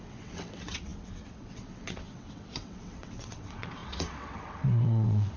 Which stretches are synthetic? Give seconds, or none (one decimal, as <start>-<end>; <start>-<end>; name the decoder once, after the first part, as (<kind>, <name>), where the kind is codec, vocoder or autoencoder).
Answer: 0.0-5.4 (vocoder, WaveNeXt)